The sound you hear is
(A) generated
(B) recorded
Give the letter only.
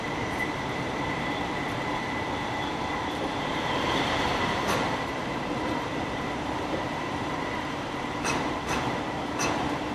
A